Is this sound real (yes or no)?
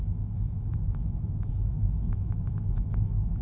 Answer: no